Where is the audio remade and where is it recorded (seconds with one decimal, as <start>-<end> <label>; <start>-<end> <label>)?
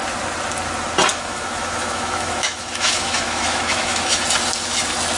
0.0-1.1 recorded; 1.1-4.2 remade; 4.2-5.2 recorded